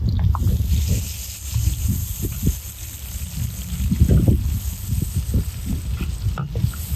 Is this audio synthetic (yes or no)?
no